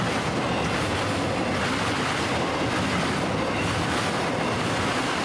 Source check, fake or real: real